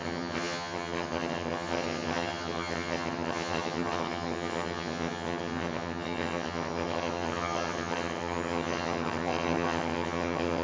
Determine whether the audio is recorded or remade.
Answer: remade